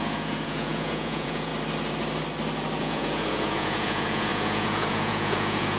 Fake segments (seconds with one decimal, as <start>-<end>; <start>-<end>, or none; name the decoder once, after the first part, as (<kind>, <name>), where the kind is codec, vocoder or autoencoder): 0.0-1.5 (vocoder, Vocos); 2.8-5.8